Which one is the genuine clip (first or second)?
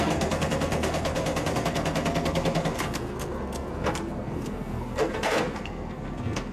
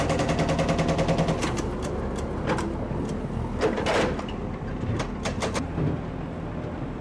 second